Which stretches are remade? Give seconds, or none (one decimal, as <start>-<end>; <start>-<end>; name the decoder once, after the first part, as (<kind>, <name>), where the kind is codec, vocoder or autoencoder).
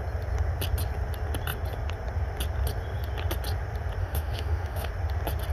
4.0-4.9 (autoencoder, DAC-VAE)